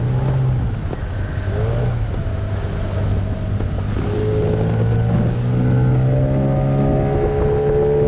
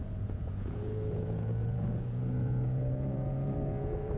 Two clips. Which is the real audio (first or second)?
first